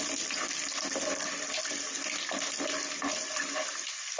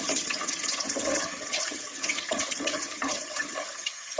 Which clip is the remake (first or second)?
second